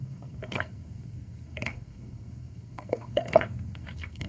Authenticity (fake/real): fake